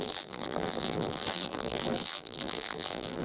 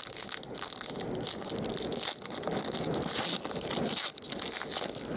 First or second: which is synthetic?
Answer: first